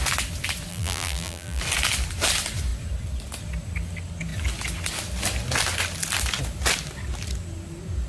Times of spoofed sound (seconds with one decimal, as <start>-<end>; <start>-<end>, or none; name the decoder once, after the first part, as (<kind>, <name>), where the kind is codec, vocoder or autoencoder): 0.7-1.6 (vocoder, BigVGAN v2)

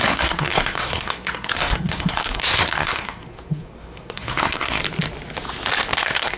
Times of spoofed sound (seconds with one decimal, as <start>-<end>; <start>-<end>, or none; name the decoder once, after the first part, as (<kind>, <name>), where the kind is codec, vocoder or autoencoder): 0.0-4.8 (codec, SNAC); 6.0-6.4

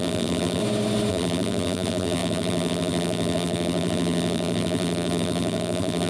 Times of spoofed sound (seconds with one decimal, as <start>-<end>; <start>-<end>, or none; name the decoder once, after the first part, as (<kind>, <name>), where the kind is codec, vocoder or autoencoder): 0.0-0.6 (vocoder, BigVGAN v2); 1.1-6.1